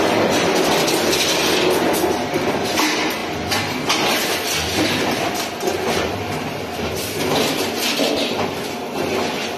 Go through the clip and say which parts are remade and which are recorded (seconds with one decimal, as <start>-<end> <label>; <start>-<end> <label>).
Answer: 0.0-9.6 recorded